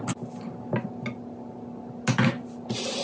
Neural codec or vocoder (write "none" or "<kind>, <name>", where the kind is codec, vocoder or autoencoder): none